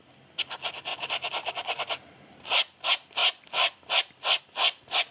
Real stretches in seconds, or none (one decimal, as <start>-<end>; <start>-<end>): 0.0-5.1